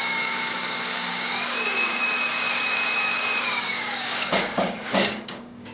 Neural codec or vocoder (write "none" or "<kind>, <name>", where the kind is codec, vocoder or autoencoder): codec, DAC